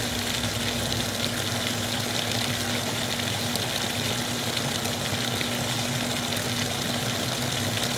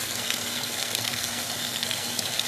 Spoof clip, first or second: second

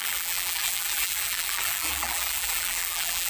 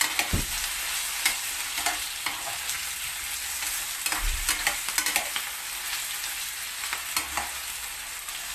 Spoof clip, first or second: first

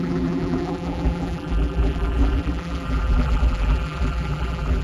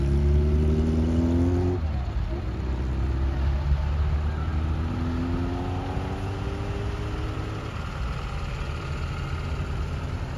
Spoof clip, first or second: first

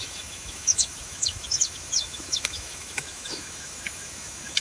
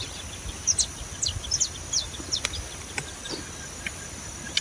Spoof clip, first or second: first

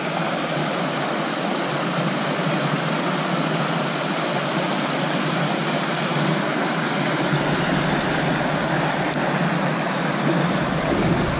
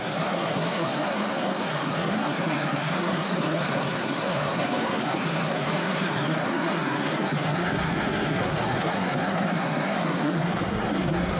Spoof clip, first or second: second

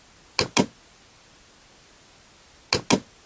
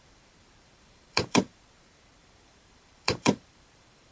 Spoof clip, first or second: second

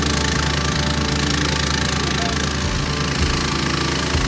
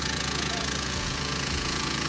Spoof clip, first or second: second